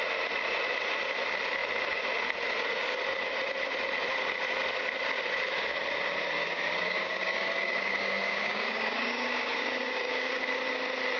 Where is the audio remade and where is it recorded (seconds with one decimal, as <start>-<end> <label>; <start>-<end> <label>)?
0.0-6.4 recorded; 6.4-10.4 remade; 10.4-11.2 recorded